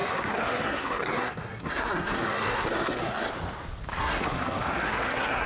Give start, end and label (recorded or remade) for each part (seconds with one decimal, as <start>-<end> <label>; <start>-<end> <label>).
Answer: 0.0-3.3 remade; 3.3-4.0 recorded; 4.0-5.5 remade